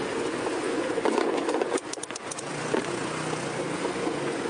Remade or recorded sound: remade